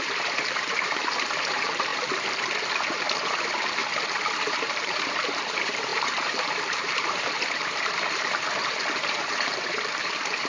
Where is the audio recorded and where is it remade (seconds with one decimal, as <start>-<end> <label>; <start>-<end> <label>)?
0.0-1.9 remade; 1.9-2.7 recorded; 2.7-3.8 remade; 3.8-4.5 recorded; 4.5-10.5 remade